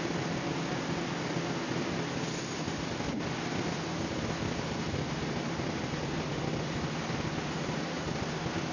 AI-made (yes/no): no